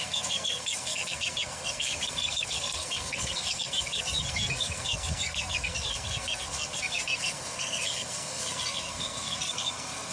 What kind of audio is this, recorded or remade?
remade